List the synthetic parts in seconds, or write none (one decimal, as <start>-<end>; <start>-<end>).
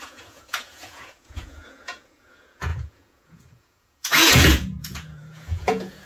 0.0-6.1